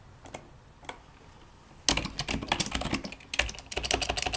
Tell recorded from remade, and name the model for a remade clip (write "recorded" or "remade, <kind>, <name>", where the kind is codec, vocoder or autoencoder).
recorded